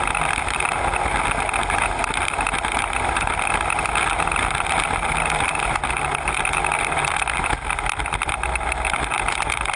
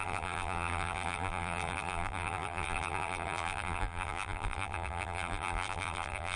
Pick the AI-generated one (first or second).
second